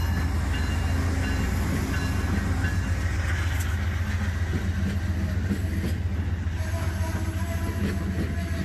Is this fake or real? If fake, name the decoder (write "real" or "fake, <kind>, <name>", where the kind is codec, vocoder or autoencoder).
real